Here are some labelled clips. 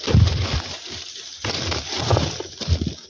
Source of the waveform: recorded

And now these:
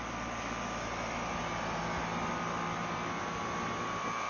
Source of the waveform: recorded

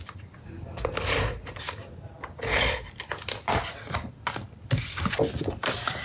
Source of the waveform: recorded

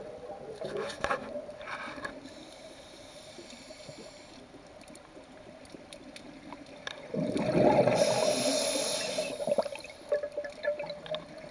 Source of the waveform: recorded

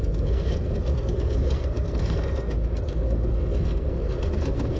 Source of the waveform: remade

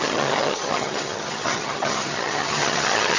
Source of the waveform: remade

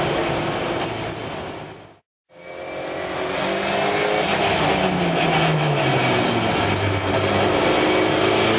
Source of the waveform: recorded